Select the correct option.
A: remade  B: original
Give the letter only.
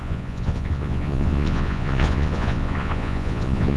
A